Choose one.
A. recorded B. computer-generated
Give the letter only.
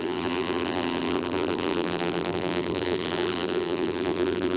B